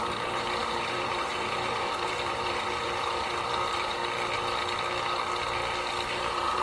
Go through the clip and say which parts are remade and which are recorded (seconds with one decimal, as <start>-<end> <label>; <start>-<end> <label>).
0.0-4.0 remade; 4.0-6.1 recorded; 6.1-6.6 remade

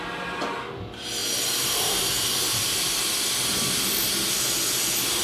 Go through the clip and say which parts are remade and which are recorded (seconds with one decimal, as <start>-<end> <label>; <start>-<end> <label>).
0.0-5.2 recorded

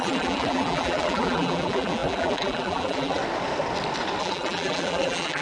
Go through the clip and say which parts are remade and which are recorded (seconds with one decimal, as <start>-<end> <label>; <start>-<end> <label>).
0.0-3.2 remade; 3.2-4.2 recorded; 4.2-5.4 remade

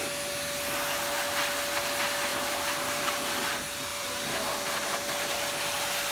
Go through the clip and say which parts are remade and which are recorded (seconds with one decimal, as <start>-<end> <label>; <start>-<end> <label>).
0.0-2.3 recorded; 2.3-3.1 remade; 3.1-3.9 recorded; 3.9-5.6 remade; 5.6-6.1 recorded

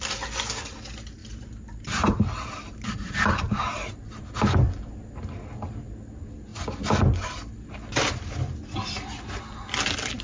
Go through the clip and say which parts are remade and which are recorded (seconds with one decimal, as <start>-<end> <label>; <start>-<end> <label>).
0.0-1.2 recorded; 1.2-4.3 remade; 4.3-10.2 recorded

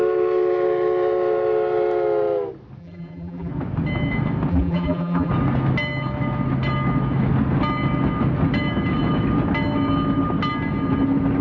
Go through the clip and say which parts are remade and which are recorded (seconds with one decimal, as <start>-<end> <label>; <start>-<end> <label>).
0.0-2.8 recorded; 2.8-3.5 remade; 3.5-4.5 recorded; 4.5-5.3 remade; 5.3-11.4 recorded

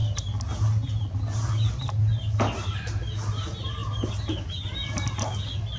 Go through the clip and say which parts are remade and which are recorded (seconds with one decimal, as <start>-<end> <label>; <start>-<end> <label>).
0.0-2.0 remade; 2.0-3.8 recorded; 3.8-4.3 remade; 4.3-5.8 recorded